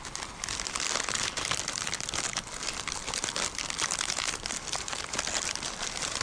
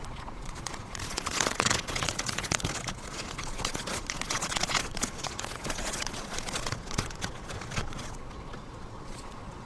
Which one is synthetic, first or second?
second